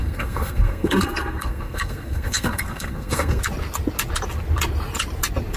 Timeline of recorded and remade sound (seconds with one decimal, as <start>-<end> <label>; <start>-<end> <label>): 0.0-3.4 remade; 3.4-5.6 recorded